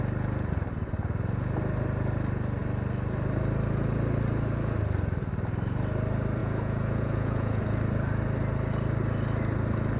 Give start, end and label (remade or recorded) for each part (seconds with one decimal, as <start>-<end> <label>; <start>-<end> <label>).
0.0-6.4 recorded; 6.4-7.6 remade; 7.6-10.0 recorded